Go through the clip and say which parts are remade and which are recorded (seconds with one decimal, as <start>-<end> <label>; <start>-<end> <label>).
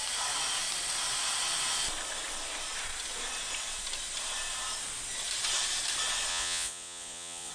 0.0-6.3 recorded; 6.3-7.5 remade